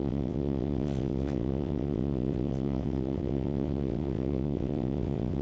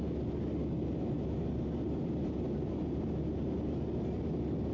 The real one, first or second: second